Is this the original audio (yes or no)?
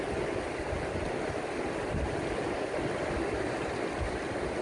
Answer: yes